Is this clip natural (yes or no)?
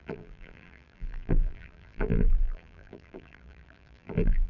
no